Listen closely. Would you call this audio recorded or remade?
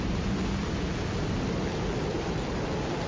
recorded